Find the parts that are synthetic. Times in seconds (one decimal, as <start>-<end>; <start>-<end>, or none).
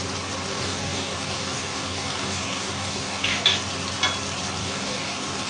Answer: 0.5-3.6; 4.6-5.5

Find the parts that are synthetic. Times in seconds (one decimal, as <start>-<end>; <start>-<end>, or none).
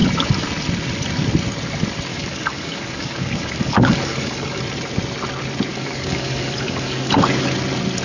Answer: 2.1-4.6; 5.7-7.1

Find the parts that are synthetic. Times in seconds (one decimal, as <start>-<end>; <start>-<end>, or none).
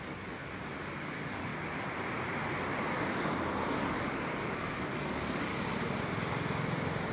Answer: 0.0-0.4; 1.0-1.5; 3.8-5.5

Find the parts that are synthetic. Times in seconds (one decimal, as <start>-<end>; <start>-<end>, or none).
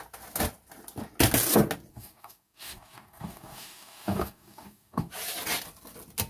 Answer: 1.9-5.1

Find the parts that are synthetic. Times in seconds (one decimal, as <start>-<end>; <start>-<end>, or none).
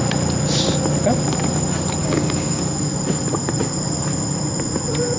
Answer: 2.0-2.6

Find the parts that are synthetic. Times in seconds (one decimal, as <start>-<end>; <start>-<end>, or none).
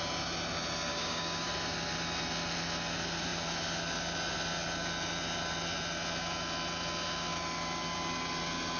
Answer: 0.9-1.5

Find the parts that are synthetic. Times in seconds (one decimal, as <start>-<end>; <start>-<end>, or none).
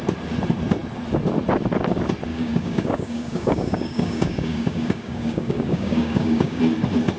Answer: 2.3-6.6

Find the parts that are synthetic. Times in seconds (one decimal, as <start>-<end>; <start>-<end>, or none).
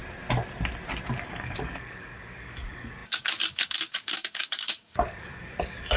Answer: 1.3-6.0